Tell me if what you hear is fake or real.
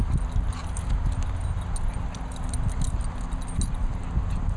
real